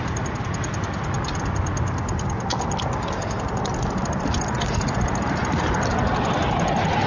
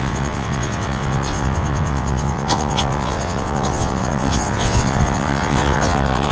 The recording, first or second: first